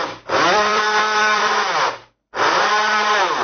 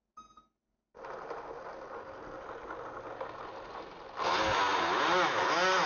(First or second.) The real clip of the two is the second